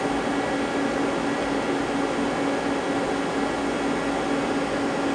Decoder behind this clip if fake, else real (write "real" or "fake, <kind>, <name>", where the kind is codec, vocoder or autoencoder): real